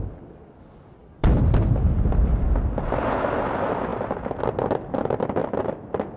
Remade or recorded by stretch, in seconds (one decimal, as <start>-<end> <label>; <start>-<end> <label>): 0.0-1.0 recorded; 1.0-2.2 remade; 2.2-3.9 recorded; 3.9-4.4 remade; 4.4-6.2 recorded